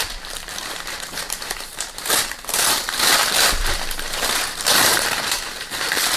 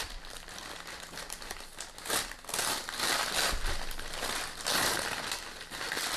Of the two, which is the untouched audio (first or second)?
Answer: second